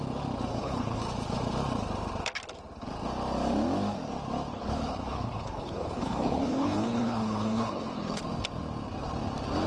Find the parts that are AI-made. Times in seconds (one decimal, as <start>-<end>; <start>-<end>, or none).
0.5-1.0; 4.5-8.2